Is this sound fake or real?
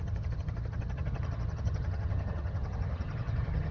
fake